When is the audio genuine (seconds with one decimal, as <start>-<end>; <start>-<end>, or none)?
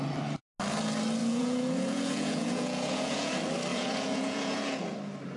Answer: 0.0-1.2; 3.3-3.7; 4.8-5.4